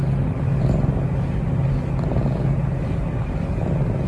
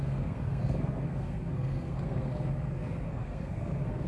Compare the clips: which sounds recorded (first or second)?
first